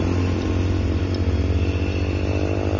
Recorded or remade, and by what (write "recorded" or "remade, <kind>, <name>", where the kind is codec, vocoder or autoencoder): recorded